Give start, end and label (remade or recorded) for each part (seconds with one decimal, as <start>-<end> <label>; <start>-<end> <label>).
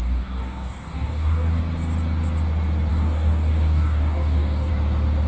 0.0-1.6 remade; 1.6-2.9 recorded; 2.9-4.7 remade; 4.7-5.3 recorded